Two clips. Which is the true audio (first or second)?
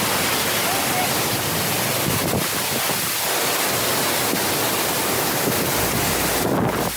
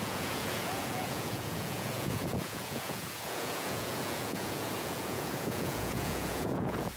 first